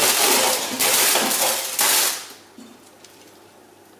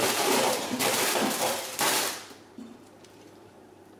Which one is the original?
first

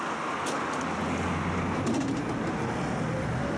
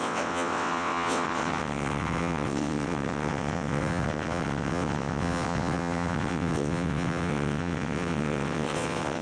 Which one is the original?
first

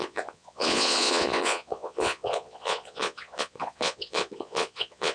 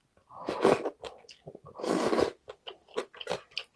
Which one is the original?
second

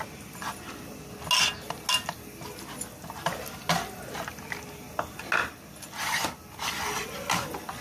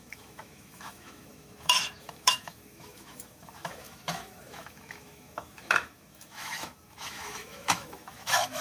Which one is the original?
first